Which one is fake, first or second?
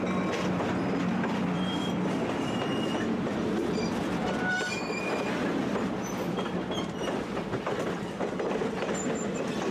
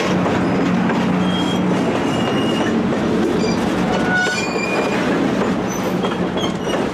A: first